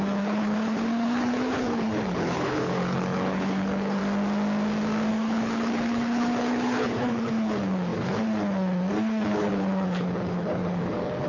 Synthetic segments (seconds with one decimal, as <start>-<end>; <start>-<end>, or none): 0.0-4.0; 5.1-11.3